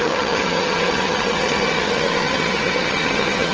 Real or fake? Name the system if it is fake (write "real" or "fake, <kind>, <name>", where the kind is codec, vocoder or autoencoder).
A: fake, vocoder, HiFi-GAN